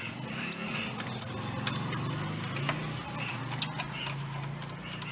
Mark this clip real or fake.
real